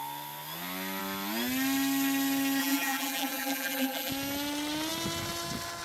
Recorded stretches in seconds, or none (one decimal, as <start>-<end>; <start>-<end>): 0.0-2.6; 4.1-5.8